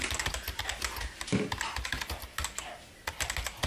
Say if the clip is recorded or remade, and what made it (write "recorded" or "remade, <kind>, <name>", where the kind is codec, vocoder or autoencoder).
recorded